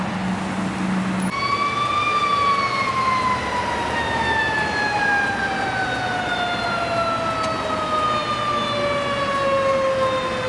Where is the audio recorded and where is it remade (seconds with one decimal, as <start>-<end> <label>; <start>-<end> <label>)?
0.0-10.5 recorded